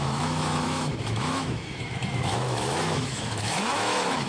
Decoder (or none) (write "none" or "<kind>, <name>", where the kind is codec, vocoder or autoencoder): autoencoder, DAC-VAE